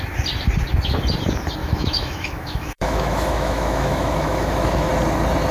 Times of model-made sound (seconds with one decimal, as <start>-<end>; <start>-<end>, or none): 1.6-4.9